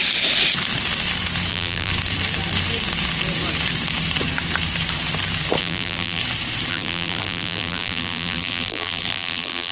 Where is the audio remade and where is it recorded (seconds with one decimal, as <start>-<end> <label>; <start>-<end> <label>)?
0.0-1.5 recorded; 1.5-1.9 remade; 1.9-5.6 recorded; 5.6-6.2 remade; 6.2-6.7 recorded; 6.7-9.7 remade